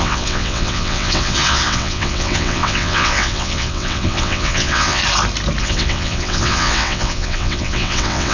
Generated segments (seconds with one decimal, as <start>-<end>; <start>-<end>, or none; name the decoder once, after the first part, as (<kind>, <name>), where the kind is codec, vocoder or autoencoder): 0.0-5.0 (vocoder, WaveNeXt); 5.6-8.3